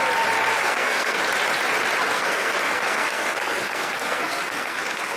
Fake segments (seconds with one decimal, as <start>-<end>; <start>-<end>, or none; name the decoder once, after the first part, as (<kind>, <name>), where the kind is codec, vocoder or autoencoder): 0.5-1.2 (codec, SNAC); 2.0-5.2